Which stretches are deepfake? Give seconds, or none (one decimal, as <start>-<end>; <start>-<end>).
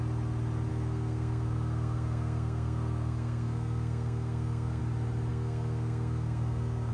0.7-4.8; 5.3-6.9